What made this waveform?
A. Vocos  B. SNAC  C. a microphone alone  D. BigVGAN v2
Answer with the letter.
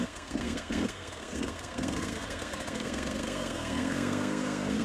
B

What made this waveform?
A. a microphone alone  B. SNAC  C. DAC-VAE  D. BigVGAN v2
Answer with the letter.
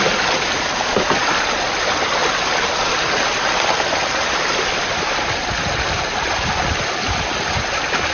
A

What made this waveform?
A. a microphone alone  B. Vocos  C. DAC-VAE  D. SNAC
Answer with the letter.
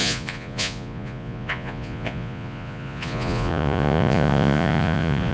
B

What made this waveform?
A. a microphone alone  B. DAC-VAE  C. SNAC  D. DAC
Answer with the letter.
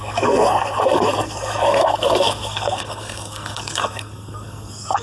C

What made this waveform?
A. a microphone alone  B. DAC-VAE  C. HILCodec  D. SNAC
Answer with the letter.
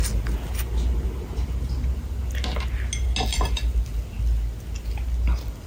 A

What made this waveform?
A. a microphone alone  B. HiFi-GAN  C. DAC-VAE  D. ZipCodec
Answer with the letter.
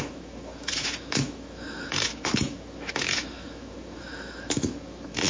C